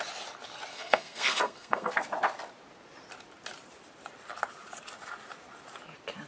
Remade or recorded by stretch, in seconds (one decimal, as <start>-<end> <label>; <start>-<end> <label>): 0.0-0.7 recorded; 0.7-1.9 remade; 1.9-6.3 recorded